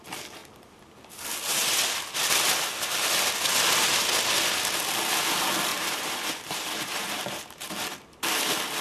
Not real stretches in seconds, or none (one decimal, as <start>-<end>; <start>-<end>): 5.7-7.7